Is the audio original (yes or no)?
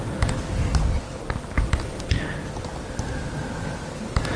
yes